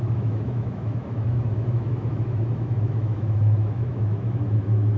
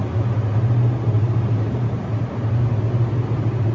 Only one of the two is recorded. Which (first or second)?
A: second